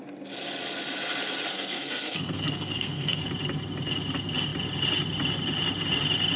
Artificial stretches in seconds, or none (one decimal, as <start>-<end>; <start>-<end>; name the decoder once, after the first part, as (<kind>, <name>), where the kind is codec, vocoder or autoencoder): 1.5-3.2 (codec, SNAC)